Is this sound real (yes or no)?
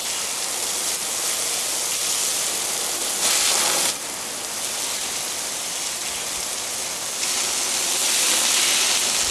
yes